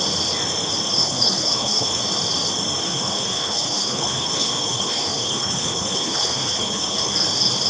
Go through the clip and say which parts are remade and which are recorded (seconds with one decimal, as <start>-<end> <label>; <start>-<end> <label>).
0.0-1.0 recorded; 1.0-2.0 remade; 2.0-2.8 recorded; 2.8-7.1 remade; 7.1-7.7 recorded